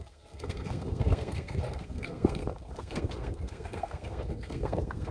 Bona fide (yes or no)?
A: no